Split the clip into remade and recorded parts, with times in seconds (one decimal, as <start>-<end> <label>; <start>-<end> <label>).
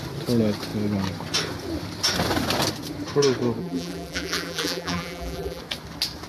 0.0-3.6 recorded; 3.6-5.6 remade; 5.6-6.3 recorded